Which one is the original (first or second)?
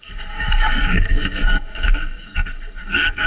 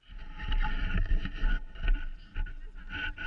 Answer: second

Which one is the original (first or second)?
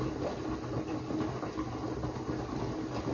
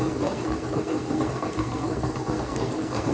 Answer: first